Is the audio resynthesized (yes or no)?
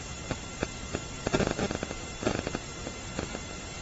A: no